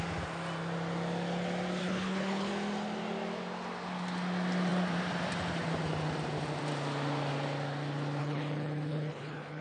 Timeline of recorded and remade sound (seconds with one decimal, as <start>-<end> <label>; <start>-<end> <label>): 0.0-1.8 recorded; 1.8-2.5 remade; 2.5-8.2 recorded; 8.2-9.6 remade